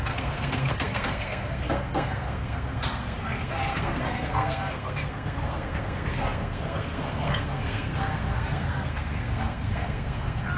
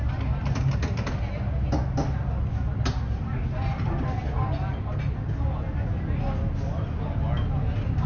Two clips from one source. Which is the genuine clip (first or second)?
second